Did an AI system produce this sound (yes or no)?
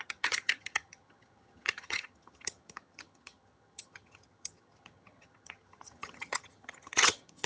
yes